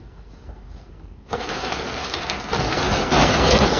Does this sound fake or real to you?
fake